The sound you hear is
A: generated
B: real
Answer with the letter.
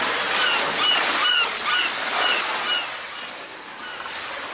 B